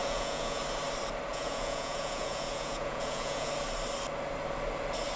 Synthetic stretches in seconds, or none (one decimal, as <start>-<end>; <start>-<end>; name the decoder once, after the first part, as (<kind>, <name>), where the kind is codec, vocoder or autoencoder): 0.0-0.6 (vocoder, Vocos); 1.3-3.5